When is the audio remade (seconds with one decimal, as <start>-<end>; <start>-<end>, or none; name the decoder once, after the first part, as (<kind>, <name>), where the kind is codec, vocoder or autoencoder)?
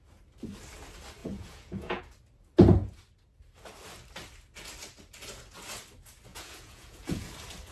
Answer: 1.2-2.0 (vocoder, Vocos); 6.3-7.3